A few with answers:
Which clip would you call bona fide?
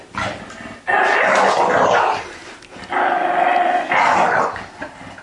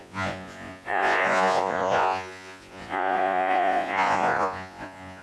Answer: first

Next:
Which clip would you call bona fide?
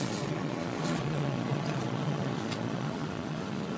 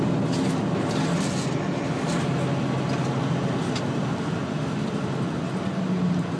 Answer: second